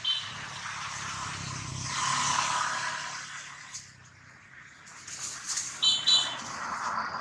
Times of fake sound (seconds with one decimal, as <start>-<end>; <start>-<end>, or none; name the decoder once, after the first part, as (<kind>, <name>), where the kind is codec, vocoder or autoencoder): none